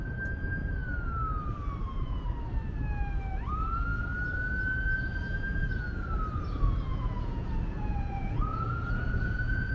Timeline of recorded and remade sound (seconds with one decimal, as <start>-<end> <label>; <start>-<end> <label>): 0.0-6.9 recorded; 6.9-9.7 remade